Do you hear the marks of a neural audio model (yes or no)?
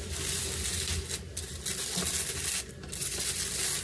no